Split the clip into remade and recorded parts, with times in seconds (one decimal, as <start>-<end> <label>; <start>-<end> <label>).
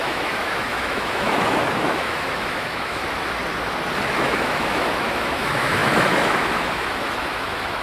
0.0-3.0 remade; 3.0-4.1 recorded; 4.1-7.8 remade